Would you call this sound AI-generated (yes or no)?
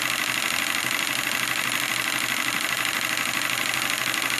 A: no